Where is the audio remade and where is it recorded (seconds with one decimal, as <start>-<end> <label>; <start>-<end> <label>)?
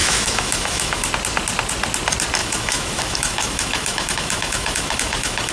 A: 0.0-1.1 remade; 1.1-2.4 recorded; 2.4-5.5 remade